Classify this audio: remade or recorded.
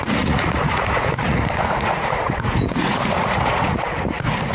remade